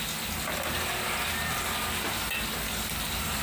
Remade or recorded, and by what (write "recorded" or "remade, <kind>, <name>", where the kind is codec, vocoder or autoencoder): recorded